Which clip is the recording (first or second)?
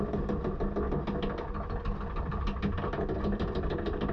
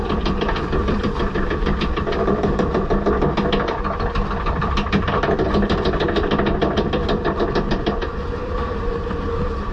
first